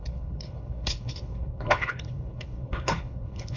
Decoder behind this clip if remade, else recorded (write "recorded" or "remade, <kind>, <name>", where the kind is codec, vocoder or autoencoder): remade, codec, HILCodec